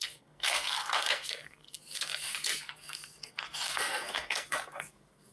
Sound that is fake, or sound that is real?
fake